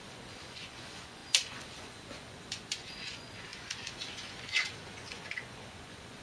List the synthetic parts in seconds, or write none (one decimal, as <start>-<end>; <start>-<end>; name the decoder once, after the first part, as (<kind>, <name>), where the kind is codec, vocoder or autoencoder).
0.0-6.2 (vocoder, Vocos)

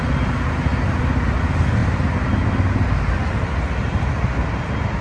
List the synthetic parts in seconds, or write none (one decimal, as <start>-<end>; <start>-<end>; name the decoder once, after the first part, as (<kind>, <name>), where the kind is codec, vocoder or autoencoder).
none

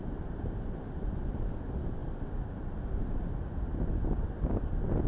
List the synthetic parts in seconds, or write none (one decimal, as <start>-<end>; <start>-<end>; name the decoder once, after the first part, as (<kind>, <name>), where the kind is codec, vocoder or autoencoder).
none